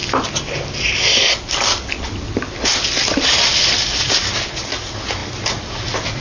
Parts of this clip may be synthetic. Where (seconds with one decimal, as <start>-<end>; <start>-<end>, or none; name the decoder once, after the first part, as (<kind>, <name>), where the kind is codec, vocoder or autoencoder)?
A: none